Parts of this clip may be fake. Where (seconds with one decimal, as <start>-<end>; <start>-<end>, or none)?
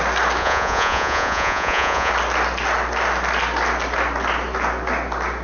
0.4-2.1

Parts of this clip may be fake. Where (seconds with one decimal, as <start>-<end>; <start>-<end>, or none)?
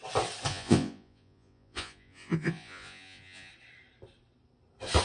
0.5-3.5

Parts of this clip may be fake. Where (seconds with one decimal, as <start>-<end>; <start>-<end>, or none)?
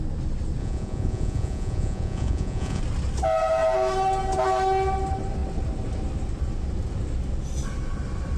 0.6-2.8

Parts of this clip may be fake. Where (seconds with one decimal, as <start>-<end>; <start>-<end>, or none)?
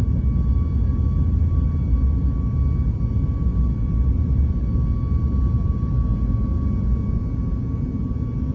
6.1-8.1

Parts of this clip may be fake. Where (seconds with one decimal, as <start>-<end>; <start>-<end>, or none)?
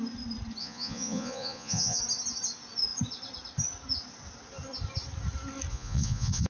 0.6-2.0; 5.7-6.5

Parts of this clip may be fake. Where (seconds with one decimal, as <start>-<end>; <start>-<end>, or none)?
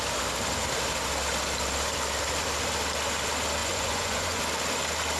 3.6-4.4